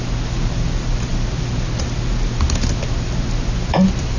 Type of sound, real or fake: real